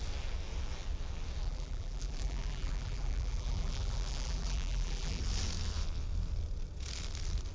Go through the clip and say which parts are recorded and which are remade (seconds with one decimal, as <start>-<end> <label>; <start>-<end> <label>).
0.0-1.4 recorded; 1.4-5.2 remade; 5.2-7.5 recorded

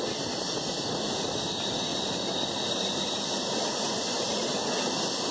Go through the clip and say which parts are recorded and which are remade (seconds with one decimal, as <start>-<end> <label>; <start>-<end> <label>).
0.0-1.9 recorded; 1.9-5.3 remade